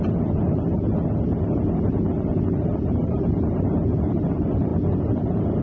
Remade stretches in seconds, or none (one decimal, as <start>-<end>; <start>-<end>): none